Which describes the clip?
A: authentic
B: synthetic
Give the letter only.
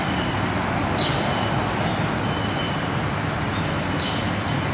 A